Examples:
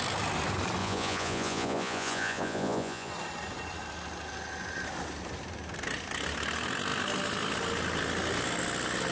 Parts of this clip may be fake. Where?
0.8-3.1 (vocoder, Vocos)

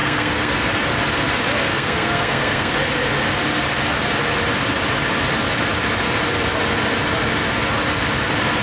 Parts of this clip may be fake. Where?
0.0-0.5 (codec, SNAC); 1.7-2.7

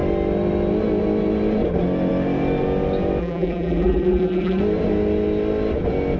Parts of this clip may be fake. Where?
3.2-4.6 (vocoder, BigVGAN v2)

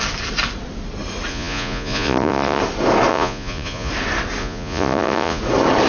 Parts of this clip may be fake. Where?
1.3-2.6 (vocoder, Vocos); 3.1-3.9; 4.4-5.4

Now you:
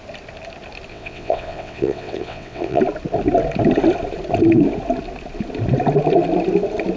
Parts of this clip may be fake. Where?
0.9-2.8 (vocoder, WaveNeXt)

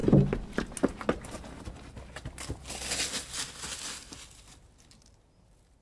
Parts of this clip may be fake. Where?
none